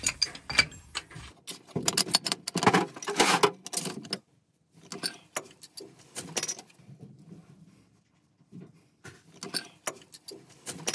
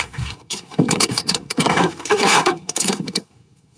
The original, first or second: first